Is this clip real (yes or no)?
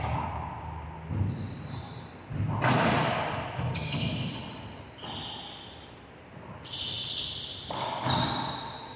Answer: yes